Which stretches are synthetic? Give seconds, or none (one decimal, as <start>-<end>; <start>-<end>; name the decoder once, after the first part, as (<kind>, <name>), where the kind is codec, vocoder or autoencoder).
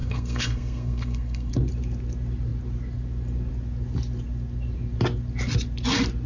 0.0-1.5 (codec, SNAC)